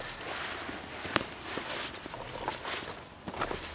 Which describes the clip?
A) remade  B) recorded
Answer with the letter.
B